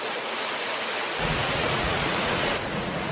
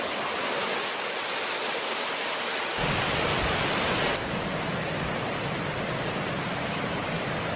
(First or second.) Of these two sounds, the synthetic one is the first